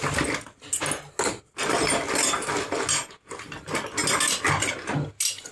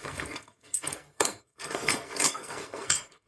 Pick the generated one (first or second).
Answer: second